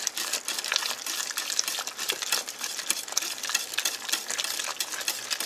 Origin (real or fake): real